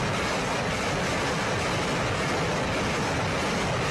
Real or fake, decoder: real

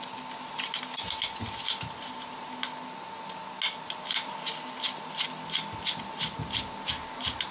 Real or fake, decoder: real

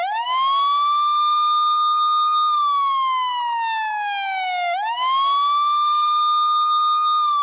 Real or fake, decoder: fake, autoencoder, DAC-VAE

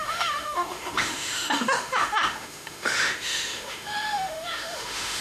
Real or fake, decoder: fake, autoencoder, DAC-VAE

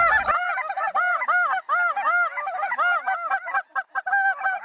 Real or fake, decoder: real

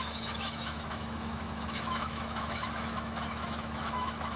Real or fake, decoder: fake, autoencoder, DAC-VAE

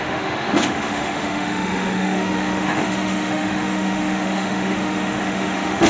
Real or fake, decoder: fake, autoencoder, DAC-VAE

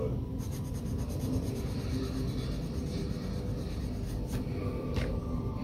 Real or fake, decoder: real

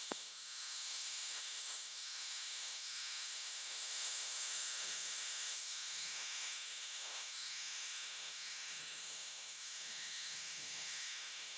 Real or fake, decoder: fake, autoencoder, DAC-VAE